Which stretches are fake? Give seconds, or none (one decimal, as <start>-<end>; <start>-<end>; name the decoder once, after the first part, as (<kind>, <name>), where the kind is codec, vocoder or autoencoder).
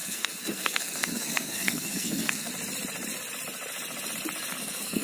0.0-2.5 (codec, SNAC); 4.6-5.0